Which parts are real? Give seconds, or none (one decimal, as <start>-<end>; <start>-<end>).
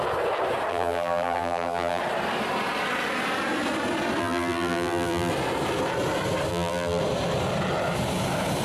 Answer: 0.0-0.7; 2.0-4.2; 5.3-6.5; 7.0-8.6